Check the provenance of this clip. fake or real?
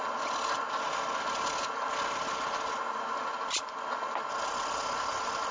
real